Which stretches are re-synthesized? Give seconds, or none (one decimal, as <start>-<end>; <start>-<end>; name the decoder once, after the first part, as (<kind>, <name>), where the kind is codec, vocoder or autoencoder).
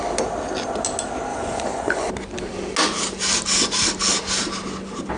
1.3-2.1 (vocoder, Vocos)